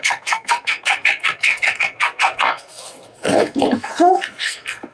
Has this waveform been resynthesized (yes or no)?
yes